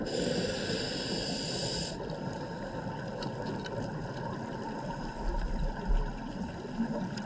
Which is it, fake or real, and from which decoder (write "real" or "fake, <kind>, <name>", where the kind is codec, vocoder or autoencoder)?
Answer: real